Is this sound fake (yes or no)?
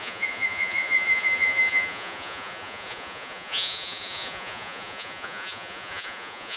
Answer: yes